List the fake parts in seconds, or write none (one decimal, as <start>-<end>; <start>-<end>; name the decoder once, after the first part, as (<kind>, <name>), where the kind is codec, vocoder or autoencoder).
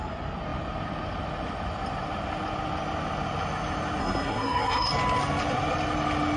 4.0-4.9 (codec, SNAC)